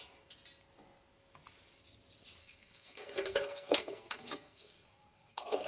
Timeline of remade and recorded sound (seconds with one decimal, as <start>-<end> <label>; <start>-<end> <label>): 0.0-2.4 recorded; 2.4-5.7 remade